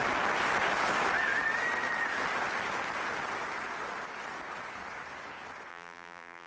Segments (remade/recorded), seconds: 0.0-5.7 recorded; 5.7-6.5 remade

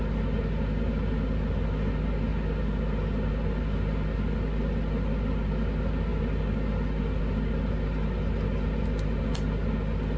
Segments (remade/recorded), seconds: 0.0-10.2 recorded

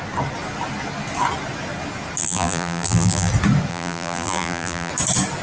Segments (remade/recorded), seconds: 0.0-2.2 recorded; 2.2-3.3 remade; 3.3-3.7 recorded; 3.7-4.9 remade; 4.9-5.4 recorded

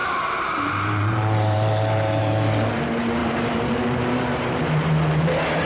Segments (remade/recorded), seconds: 0.0-2.2 remade; 2.2-3.2 recorded; 3.2-5.2 remade; 5.2-5.7 recorded

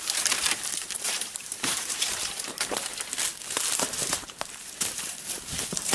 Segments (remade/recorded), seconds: 0.0-2.9 remade; 2.9-3.6 recorded; 3.6-5.9 remade